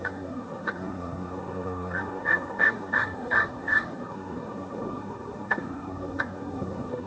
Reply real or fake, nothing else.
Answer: fake